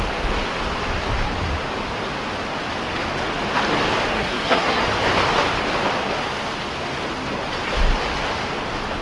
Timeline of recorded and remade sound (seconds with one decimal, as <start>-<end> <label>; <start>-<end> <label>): 0.0-4.1 recorded; 4.1-4.8 remade; 4.8-9.0 recorded